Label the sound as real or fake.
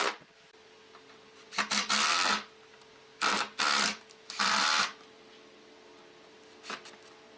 real